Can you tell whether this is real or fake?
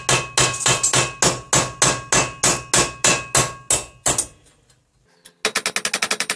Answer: real